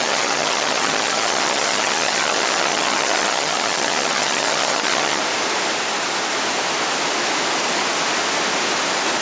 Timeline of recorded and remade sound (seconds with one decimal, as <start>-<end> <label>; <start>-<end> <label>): 0.0-5.2 remade; 5.2-9.2 recorded